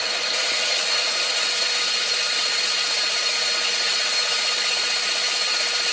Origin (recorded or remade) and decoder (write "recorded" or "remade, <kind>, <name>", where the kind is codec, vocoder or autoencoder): remade, vocoder, Vocos